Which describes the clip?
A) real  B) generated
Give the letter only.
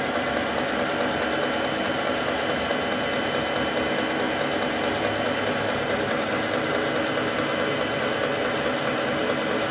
A